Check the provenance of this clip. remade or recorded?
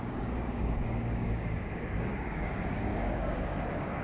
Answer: remade